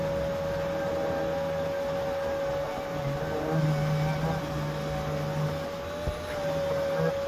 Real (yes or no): yes